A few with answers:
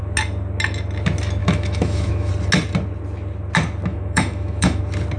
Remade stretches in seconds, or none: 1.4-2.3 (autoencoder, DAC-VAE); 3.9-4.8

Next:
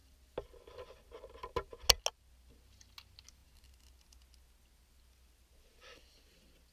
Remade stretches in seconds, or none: none

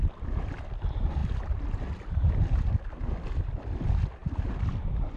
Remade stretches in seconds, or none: 1.2-2.3 (vocoder, BigVGAN v2); 4.2-5.2

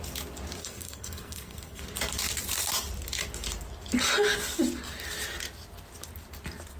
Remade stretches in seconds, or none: 0.6-1.8 (codec, SNAC)

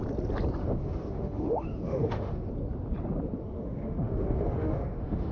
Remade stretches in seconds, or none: 0.6-2.5 (autoencoder, DAC-VAE); 3.4-5.3

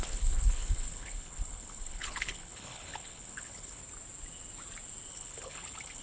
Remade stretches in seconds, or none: 0.0-3.8 (codec, HILCodec); 5.1-6.0